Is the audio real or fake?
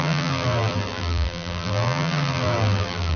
fake